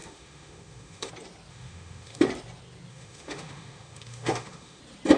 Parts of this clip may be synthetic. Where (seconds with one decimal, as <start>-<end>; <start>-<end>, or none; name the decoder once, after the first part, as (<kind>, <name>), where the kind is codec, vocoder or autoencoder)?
0.0-1.1 (autoencoder, DAC-VAE); 1.5-2.3; 2.9-4.8